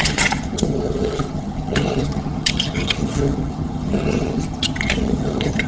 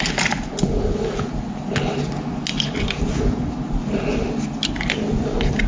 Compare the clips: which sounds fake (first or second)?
first